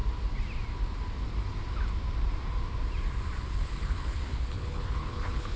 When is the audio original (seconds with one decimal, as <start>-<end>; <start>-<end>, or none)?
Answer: 0.0-3.4

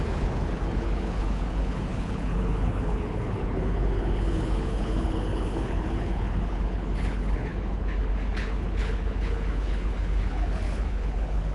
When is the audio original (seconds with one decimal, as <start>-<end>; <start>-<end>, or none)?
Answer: none

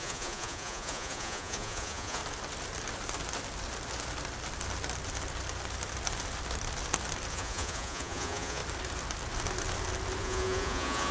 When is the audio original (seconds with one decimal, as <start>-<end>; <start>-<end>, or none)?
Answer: 2.2-7.3; 8.6-10.2

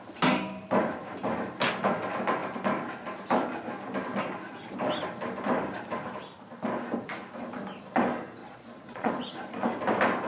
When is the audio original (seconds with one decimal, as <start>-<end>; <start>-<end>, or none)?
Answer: 0.0-8.4; 9.1-10.3

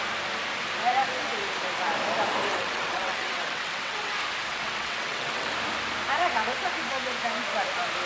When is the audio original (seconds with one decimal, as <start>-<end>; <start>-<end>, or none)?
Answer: 0.0-2.5; 4.1-4.5; 5.5-8.1

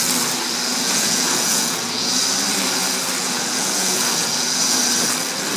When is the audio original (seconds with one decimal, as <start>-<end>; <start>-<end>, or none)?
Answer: 0.0-0.7; 2.2-3.2; 4.8-5.6

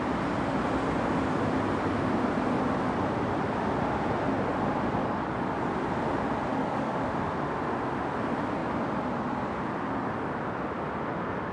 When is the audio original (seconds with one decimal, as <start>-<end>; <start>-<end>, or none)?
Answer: 0.0-5.0; 5.6-6.5; 7.1-11.5